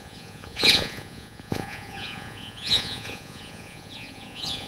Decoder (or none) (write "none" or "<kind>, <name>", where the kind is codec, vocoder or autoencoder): vocoder, Vocos